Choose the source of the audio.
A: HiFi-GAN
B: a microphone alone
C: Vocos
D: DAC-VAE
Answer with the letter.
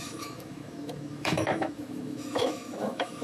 D